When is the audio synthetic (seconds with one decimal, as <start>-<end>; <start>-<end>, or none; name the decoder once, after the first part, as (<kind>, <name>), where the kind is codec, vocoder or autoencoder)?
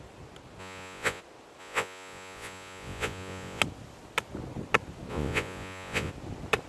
0.6-1.2 (vocoder, Vocos); 1.6-3.6; 5.1-6.1